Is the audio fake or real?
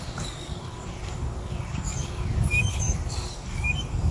fake